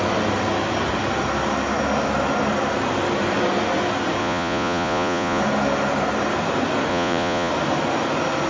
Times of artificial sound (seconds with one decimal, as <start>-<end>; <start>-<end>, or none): 4.2-5.4; 6.9-7.5